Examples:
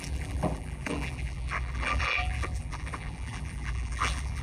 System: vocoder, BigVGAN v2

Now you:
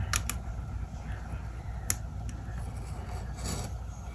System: none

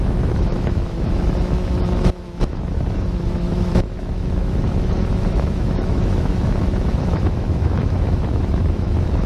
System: autoencoder, DAC-VAE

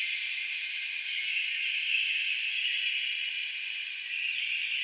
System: none